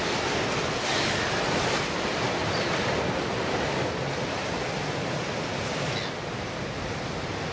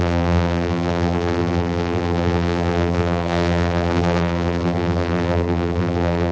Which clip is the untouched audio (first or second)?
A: first